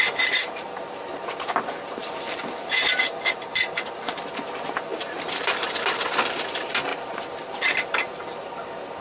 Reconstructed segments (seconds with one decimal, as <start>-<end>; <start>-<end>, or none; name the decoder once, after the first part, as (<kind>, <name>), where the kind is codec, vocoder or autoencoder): 0.0-9.0 (vocoder, BigVGAN v2)